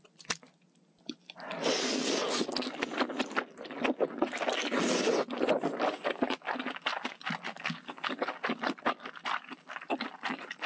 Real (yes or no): yes